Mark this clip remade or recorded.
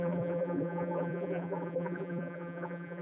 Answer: remade